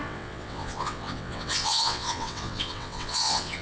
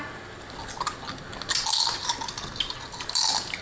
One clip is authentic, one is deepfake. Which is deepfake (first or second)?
first